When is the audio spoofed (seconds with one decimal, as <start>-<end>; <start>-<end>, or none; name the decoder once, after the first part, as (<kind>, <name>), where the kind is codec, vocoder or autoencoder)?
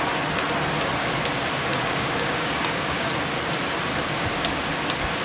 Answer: 1.7-3.1 (codec, DAC)